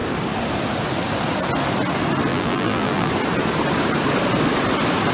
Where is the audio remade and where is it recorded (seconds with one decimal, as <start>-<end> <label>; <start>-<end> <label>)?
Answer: 0.0-2.3 recorded; 2.3-3.1 remade; 3.1-5.1 recorded